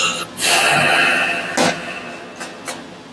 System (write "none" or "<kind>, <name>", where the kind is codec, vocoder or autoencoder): none